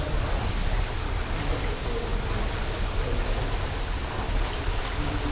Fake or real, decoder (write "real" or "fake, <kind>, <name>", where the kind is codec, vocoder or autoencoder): real